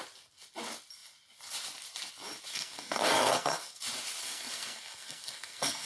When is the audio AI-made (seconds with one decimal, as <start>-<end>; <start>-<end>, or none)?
2.5-3.8; 4.2-5.9